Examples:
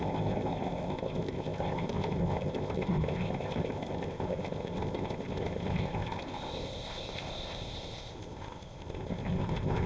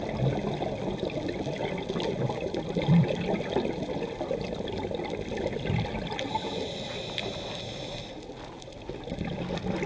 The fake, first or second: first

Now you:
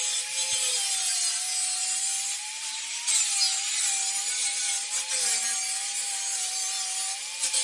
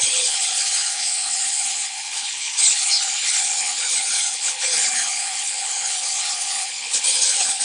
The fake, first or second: second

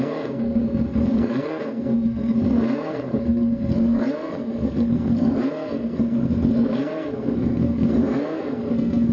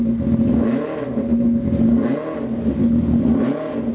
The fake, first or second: first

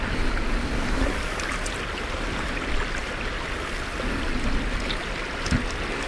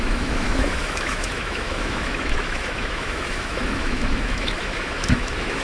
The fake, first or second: second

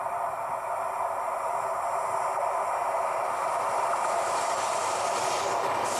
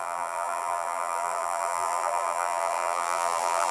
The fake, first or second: second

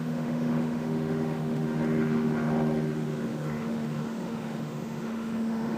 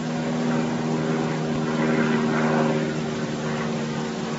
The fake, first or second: first